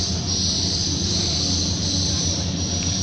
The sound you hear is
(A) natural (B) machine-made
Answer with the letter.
B